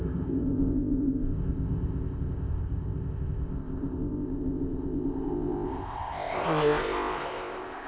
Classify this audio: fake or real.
fake